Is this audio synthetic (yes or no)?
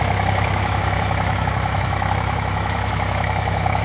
yes